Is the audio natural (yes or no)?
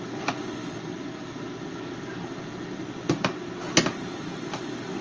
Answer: yes